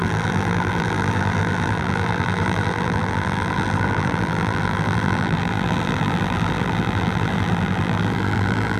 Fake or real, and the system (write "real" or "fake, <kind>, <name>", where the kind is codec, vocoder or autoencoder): fake, vocoder, BigVGAN v2